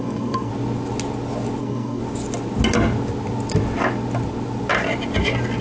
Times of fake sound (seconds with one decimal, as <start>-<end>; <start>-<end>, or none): 0.0-0.5; 1.6-2.0